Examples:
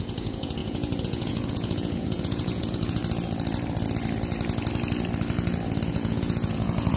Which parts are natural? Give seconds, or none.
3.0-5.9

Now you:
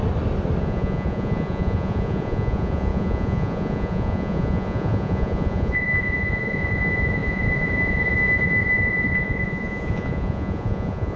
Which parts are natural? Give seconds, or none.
0.0-0.6

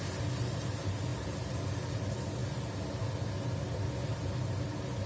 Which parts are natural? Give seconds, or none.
0.0-5.1

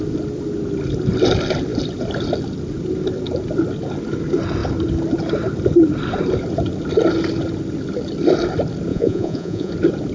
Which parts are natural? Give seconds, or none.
0.0-8.9; 9.7-10.1

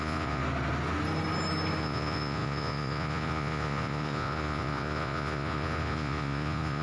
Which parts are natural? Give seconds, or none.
0.4-1.8

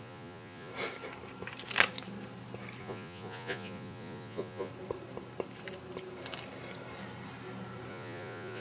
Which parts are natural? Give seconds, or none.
0.7-2.8; 4.7-7.9